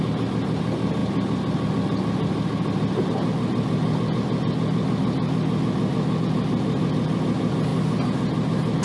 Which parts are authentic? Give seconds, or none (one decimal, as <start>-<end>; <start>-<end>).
0.0-8.8